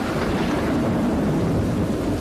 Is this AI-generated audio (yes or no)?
no